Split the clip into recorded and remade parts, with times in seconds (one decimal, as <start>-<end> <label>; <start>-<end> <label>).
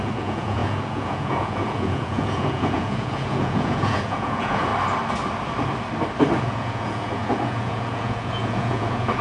0.0-4.7 remade; 4.7-6.4 recorded; 6.4-9.2 remade